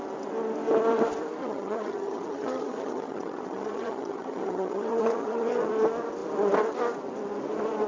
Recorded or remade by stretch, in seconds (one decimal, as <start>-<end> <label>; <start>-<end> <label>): 0.0-1.4 recorded; 1.4-5.7 remade; 5.7-7.9 recorded